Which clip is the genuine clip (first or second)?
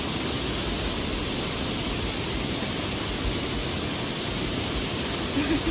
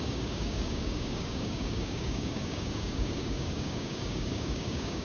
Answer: first